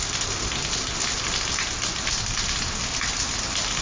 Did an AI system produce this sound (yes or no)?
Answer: no